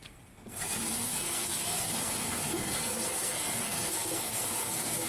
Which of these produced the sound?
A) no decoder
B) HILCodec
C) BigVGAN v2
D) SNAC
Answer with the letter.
D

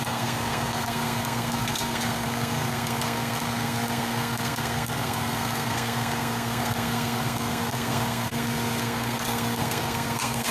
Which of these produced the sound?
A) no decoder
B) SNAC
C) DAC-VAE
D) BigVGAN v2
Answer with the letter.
B